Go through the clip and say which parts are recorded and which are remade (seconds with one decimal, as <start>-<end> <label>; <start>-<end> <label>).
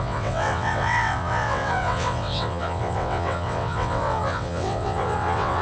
0.0-5.6 remade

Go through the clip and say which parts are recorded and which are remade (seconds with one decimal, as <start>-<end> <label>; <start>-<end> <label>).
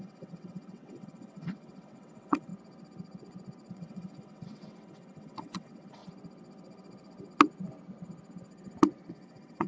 0.0-2.5 remade; 2.5-3.7 recorded; 3.7-6.0 remade; 6.0-9.1 recorded; 9.1-9.7 remade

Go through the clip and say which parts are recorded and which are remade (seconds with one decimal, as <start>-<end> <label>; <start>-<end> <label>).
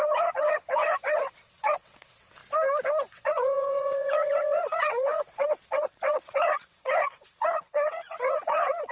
0.0-2.4 remade; 2.4-3.1 recorded; 3.1-8.9 remade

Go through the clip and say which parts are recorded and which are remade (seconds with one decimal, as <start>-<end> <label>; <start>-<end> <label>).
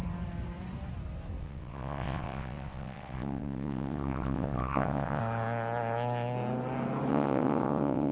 0.0-1.4 recorded; 1.4-5.2 remade; 5.2-7.1 recorded; 7.1-8.1 remade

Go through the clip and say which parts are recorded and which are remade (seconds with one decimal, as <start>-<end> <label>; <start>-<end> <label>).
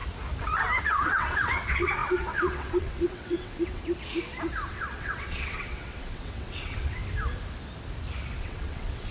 0.0-0.8 recorded; 0.8-3.8 remade; 3.8-4.7 recorded; 4.7-7.0 remade; 7.0-8.4 recorded; 8.4-9.1 remade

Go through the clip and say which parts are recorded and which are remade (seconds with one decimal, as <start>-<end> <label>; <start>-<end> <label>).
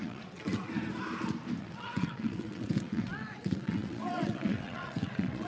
0.0-0.7 remade; 0.7-1.6 recorded; 1.6-5.5 remade